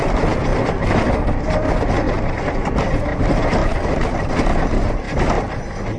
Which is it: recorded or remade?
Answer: recorded